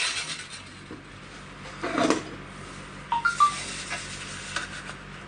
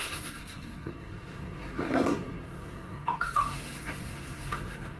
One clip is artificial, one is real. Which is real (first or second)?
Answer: first